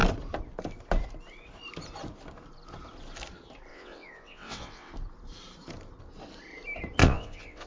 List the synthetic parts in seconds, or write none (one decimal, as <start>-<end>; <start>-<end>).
3.7-4.9; 7.0-7.7

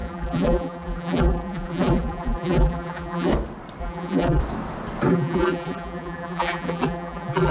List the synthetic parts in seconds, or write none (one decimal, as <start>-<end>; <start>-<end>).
0.0-3.3; 3.8-4.4; 5.1-7.5

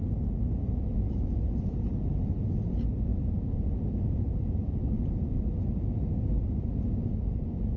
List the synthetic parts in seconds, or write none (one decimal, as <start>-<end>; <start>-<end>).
3.1-5.4

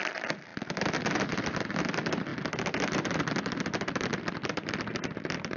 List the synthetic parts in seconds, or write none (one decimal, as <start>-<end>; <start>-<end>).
0.0-0.5; 1.0-5.6

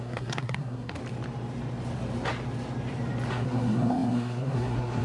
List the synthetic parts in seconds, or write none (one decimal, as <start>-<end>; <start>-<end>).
0.0-1.0; 3.3-5.0